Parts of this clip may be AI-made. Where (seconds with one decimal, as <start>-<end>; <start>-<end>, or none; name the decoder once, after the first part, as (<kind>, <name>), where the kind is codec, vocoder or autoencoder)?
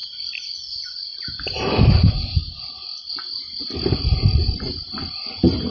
none